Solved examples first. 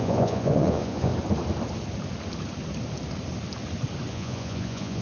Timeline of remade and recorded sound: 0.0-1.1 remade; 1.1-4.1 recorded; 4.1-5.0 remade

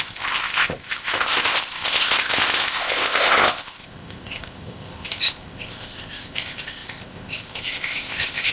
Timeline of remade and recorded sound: 0.0-8.5 remade

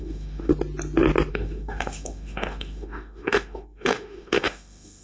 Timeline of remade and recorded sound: 0.0-0.5 remade; 0.5-1.3 recorded; 1.3-5.0 remade

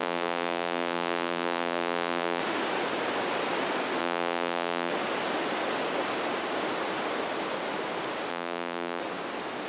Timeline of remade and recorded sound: 0.0-2.4 remade; 2.4-4.0 recorded; 4.0-4.9 remade; 4.9-8.3 recorded; 8.3-9.0 remade; 9.0-9.7 recorded

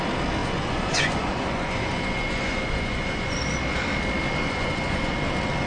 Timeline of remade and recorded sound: 0.0-0.4 recorded; 0.4-3.4 remade; 3.4-4.4 recorded; 4.4-5.1 remade; 5.1-5.7 recorded

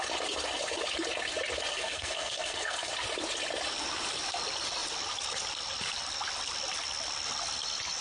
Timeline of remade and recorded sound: 0.0-1.7 recorded; 1.7-2.9 remade; 2.9-8.0 recorded

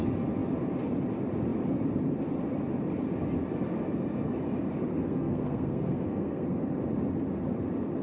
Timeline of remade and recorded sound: 0.0-4.9 recorded; 4.9-6.6 remade; 6.6-8.0 recorded

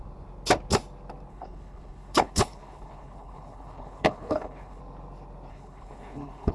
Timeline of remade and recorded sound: 0.0-1.3 recorded; 1.3-4.8 remade; 4.8-5.5 recorded; 5.5-6.5 remade